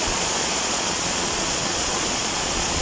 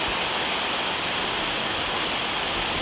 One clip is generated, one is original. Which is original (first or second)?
second